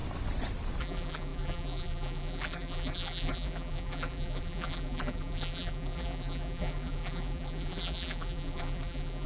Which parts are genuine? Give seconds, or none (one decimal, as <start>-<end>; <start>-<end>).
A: 0.0-0.8